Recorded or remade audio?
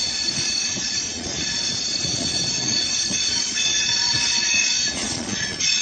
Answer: remade